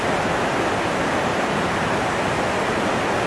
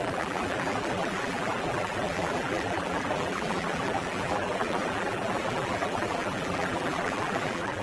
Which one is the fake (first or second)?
second